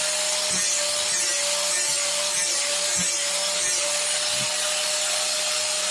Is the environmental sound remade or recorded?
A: recorded